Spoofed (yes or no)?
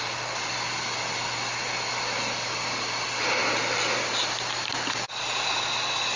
no